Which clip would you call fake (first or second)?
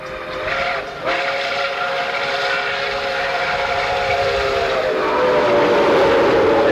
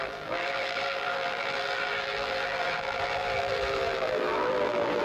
second